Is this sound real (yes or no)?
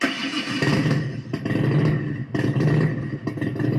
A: yes